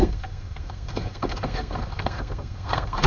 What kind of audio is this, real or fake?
fake